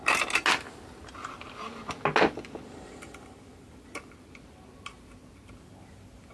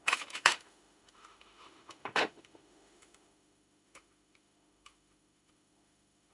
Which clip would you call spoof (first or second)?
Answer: second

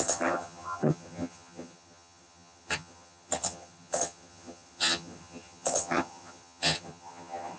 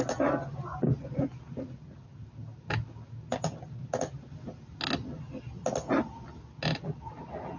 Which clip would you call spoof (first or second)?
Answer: first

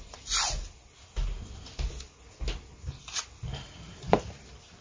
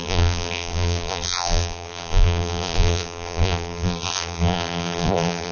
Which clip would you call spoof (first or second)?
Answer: second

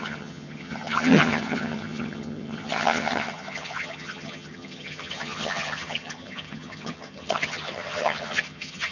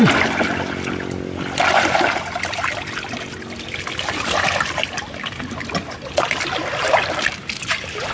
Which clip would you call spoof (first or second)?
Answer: first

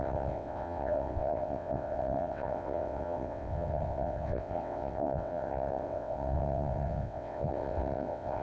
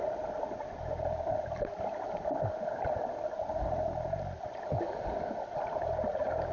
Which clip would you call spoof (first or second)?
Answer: first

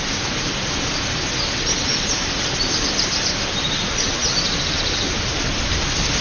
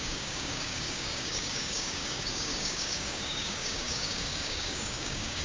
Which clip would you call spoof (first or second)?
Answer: second